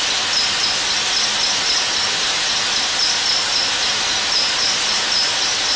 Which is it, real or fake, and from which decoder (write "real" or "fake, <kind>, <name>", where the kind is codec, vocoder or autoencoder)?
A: real